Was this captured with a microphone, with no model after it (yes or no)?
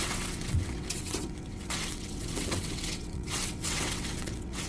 no